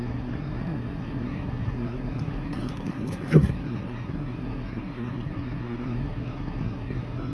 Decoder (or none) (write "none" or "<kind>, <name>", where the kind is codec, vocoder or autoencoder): codec, SNAC